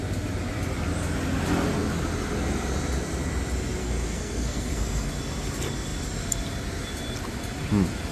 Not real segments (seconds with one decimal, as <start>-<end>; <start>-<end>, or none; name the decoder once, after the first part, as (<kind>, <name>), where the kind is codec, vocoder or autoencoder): 3.8-5.1 (codec, SNAC)